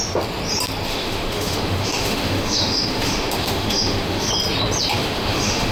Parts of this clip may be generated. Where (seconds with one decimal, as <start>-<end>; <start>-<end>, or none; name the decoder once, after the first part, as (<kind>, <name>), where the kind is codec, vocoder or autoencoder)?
0.9-4.3 (autoencoder, DAC-VAE); 4.9-5.7